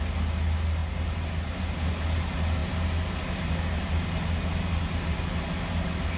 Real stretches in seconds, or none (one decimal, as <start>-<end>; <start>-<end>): 0.0-6.2